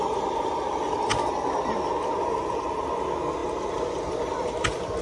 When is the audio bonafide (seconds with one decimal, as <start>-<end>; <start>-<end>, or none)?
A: 0.0-5.0